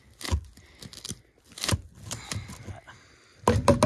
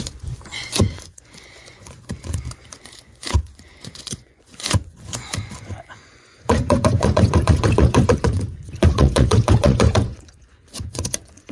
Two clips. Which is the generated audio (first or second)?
second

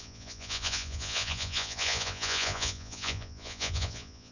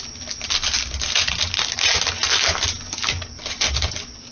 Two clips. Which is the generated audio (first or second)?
first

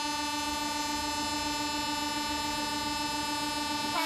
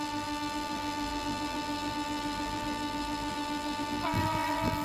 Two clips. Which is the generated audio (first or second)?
second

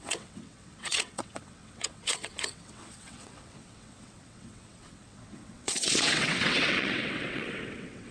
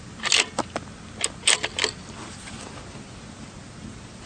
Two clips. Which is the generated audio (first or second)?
first